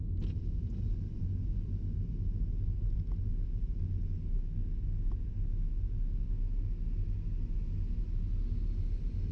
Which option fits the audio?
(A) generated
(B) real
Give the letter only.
B